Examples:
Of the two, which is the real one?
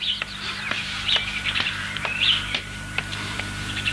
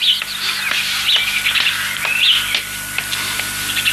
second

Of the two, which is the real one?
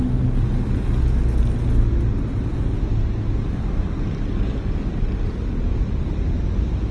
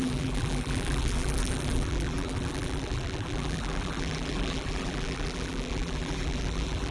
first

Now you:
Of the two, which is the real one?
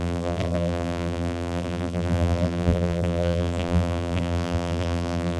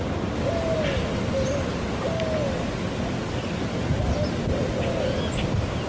second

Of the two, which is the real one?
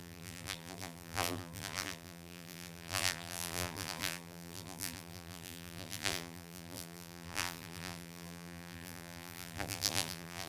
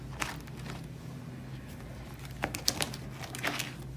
second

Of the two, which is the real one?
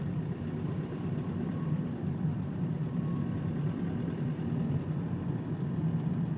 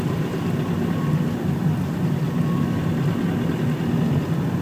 second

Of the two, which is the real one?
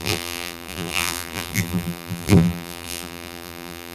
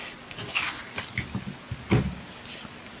second